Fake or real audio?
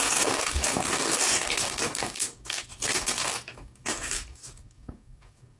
fake